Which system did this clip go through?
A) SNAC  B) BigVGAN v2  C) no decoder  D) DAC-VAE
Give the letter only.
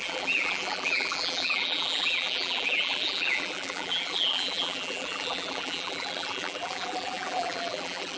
B